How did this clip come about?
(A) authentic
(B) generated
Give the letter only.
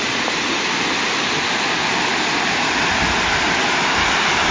A